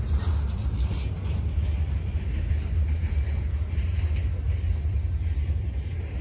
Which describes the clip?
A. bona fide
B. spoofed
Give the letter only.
A